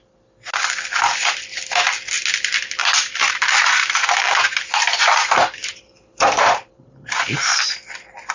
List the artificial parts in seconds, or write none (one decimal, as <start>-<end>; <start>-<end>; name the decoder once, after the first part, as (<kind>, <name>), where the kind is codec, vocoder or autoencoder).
2.8-7.6 (vocoder, BigVGAN v2)